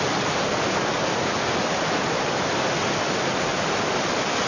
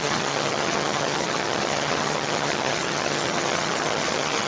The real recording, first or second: first